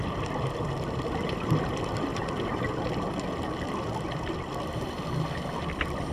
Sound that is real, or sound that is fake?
real